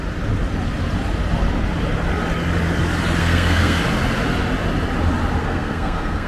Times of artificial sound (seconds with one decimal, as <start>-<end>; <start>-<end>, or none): 3.2-3.8; 5.4-6.3